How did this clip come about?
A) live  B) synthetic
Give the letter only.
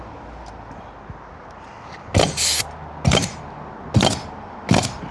A